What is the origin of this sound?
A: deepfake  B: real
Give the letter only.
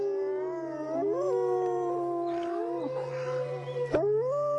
B